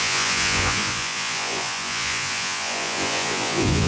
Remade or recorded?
remade